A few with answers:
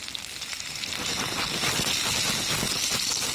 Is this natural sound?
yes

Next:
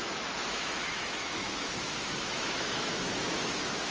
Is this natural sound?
no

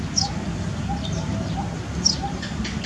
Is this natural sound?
yes